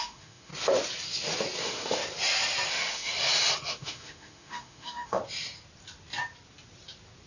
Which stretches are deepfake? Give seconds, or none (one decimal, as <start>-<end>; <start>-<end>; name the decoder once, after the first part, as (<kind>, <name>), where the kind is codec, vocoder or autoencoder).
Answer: 0.0-0.5 (autoencoder, DAC-VAE); 1.6-2.0; 2.7-3.1; 3.7-5.2